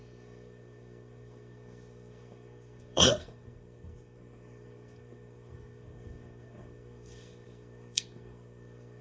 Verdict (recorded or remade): remade